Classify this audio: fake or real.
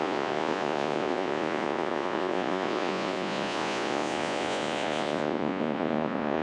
fake